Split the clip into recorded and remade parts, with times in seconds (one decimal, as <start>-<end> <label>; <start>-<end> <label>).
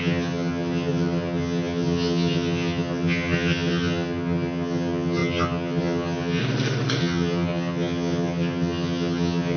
0.0-6.4 remade; 6.4-7.0 recorded; 7.0-9.6 remade